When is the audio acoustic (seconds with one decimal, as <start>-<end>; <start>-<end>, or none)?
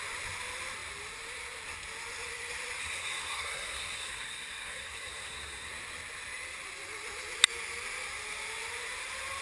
0.0-2.8; 5.7-9.4